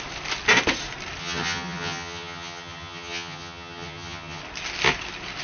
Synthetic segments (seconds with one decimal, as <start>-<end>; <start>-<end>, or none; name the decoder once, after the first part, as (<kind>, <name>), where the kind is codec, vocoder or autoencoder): 1.2-4.4 (vocoder, HiFi-GAN)